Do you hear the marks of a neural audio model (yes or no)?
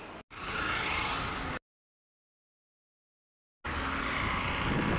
no